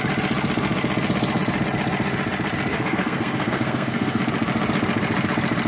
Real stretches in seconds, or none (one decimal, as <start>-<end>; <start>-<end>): 0.0-2.7; 4.2-5.7

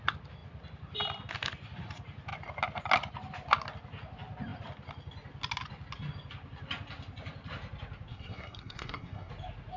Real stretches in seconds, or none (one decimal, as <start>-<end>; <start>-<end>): 0.0-8.1; 9.3-9.8

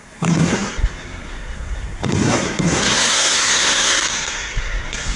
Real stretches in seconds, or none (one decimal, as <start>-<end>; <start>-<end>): none

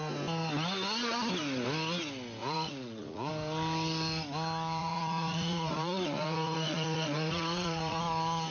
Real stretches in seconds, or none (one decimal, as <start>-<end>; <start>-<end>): 0.0-2.4; 3.3-4.8; 8.0-8.5

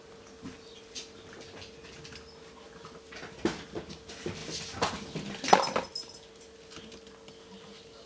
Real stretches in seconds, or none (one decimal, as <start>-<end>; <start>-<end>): 0.0-8.1

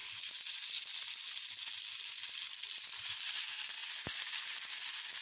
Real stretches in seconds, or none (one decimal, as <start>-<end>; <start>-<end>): 0.0-5.2